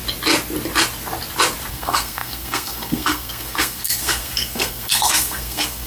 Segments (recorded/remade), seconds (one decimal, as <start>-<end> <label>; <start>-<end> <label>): 0.0-1.7 recorded; 1.7-5.9 remade